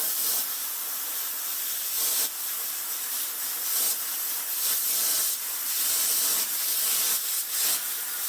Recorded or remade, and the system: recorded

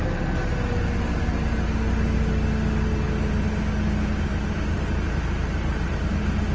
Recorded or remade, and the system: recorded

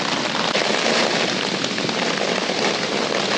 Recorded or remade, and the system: recorded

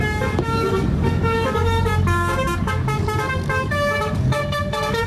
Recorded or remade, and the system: remade, codec, DAC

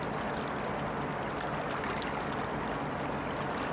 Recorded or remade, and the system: recorded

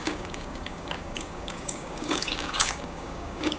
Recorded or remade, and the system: remade, codec, DAC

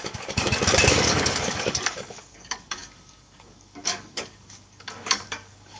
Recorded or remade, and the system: remade, codec, DAC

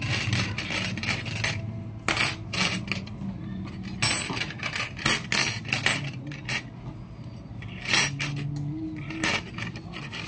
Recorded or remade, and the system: recorded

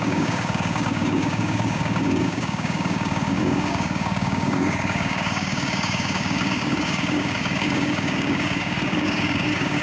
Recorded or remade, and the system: remade, codec, DAC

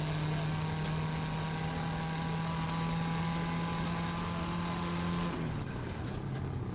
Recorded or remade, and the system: recorded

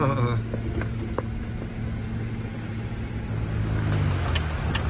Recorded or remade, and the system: recorded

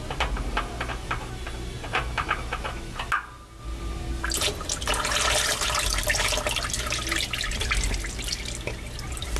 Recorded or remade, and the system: recorded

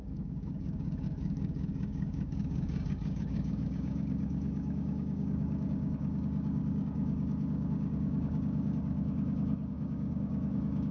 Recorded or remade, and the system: remade, codec, DAC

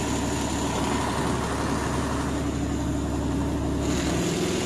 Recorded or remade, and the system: recorded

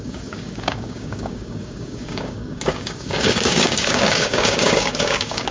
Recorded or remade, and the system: remade, codec, DAC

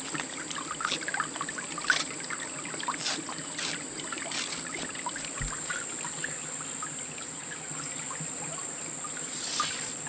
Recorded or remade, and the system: recorded